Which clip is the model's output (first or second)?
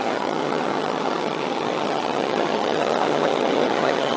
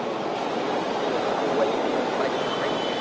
first